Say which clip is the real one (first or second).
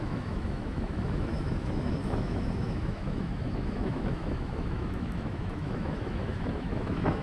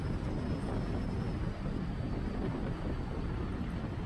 second